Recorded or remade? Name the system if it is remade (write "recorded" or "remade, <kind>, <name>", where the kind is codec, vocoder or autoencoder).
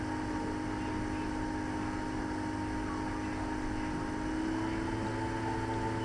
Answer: recorded